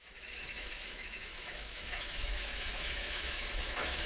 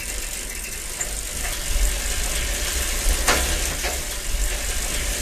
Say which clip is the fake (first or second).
first